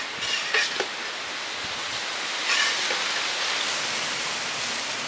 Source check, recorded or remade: recorded